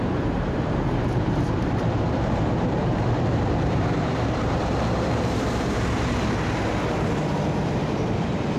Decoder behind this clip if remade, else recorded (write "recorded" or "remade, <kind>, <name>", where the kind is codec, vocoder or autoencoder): remade, vocoder, BigVGAN v2